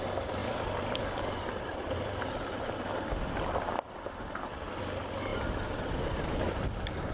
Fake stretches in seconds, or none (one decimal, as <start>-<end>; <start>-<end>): none